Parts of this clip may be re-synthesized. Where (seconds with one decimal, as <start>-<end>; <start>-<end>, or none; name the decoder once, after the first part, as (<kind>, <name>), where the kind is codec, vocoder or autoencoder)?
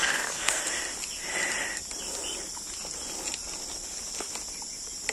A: 0.0-0.6 (codec, SNAC)